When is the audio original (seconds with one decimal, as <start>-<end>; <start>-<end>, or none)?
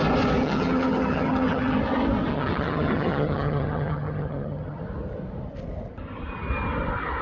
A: 0.0-0.4; 1.8-2.3; 4.8-7.2